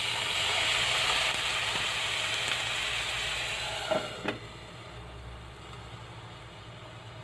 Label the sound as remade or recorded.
recorded